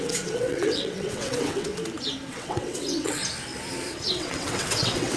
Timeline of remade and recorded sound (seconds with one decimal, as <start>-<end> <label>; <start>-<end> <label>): 0.0-1.7 remade; 1.7-2.3 recorded; 2.3-3.2 remade; 3.2-4.1 recorded; 4.1-5.2 remade